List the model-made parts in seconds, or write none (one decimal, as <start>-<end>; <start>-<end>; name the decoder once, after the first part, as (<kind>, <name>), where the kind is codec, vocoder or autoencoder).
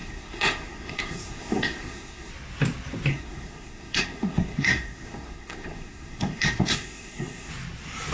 0.0-2.3 (codec, SNAC); 3.1-7.5